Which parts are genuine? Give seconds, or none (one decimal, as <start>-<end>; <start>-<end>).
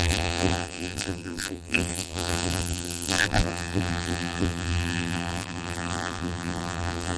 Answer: none